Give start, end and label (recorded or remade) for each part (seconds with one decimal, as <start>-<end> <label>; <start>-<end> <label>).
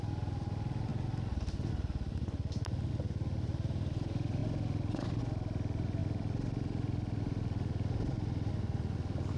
0.0-9.4 recorded